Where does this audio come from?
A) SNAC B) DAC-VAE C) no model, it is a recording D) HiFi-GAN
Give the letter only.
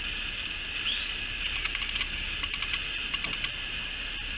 C